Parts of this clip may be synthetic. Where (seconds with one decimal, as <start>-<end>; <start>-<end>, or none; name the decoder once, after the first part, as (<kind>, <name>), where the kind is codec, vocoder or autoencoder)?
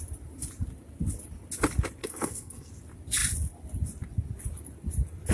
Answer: 2.0-2.7 (codec, SNAC)